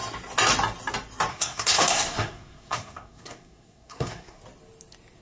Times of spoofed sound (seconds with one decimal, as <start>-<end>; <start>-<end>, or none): 1.3-4.4